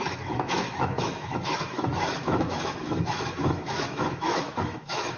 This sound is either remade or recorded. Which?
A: remade